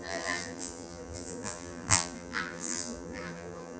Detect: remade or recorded remade